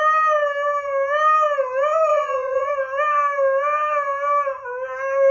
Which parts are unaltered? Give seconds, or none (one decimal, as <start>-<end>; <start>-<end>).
0.0-2.1; 2.7-5.3